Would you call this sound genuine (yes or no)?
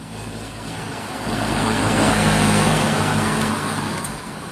no